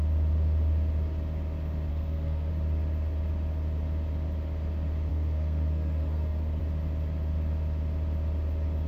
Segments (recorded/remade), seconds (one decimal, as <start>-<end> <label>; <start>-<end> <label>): 0.0-1.9 recorded; 1.9-2.5 remade; 2.5-5.1 recorded; 5.1-6.6 remade; 6.6-8.9 recorded